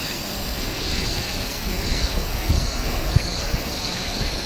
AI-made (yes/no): yes